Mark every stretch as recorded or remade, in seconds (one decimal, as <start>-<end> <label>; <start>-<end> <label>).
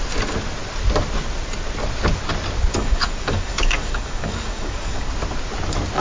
0.0-2.7 recorded; 2.7-5.1 remade; 5.1-6.0 recorded